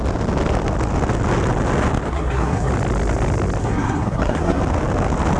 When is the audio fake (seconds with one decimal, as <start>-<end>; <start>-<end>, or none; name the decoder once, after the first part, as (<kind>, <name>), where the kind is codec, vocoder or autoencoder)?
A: 2.1-2.7 (codec, SNAC); 3.6-4.6